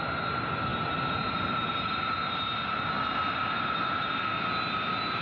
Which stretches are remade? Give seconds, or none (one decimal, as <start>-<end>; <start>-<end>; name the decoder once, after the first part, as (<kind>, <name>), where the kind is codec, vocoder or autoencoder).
none